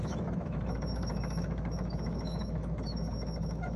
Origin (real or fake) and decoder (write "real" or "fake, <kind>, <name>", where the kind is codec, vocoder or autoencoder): fake, autoencoder, DAC-VAE